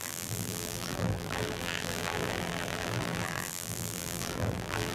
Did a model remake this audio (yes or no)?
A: yes